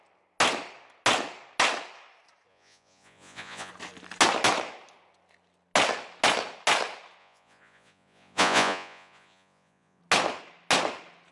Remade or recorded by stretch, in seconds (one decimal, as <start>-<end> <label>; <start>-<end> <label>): 0.0-2.5 recorded; 2.5-3.7 remade; 3.7-7.2 recorded; 7.2-10.0 remade; 10.0-11.3 recorded